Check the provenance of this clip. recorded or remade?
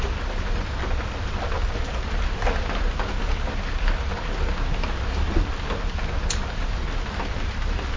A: recorded